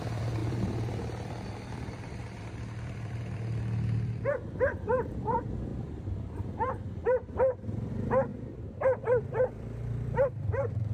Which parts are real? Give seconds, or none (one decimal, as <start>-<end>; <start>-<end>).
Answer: none